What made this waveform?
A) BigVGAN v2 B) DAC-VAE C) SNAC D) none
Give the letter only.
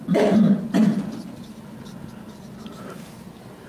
D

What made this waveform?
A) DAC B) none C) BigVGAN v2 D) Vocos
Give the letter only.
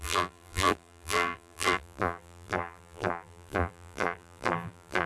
C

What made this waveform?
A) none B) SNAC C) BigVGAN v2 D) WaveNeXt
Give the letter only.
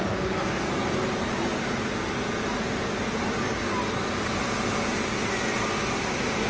A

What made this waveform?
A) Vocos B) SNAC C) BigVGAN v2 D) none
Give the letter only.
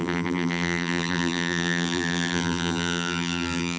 C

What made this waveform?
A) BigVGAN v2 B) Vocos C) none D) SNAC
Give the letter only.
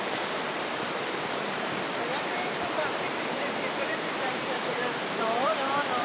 A